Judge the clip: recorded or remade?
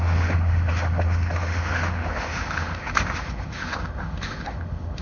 remade